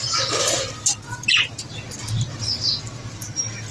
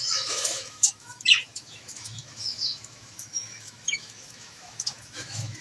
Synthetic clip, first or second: second